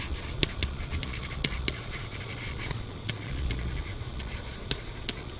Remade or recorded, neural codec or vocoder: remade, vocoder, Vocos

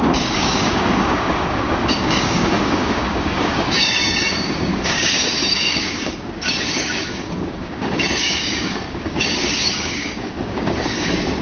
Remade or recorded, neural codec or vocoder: remade, codec, DAC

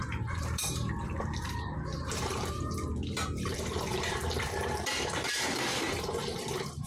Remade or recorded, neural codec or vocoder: remade, vocoder, BigVGAN v2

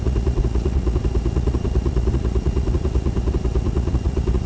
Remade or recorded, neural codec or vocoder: remade, vocoder, Vocos